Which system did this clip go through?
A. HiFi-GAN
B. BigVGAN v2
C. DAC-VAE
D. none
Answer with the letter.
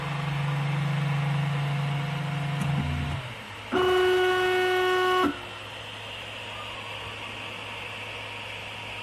D